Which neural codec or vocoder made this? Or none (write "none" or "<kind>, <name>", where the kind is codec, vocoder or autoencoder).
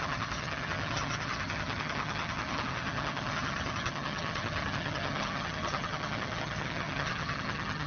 vocoder, HiFi-GAN